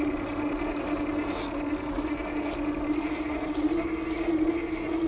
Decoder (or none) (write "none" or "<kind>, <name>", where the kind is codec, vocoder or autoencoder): none